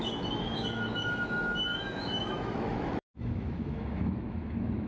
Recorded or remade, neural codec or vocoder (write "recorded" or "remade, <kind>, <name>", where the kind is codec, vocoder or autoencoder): remade, autoencoder, DAC-VAE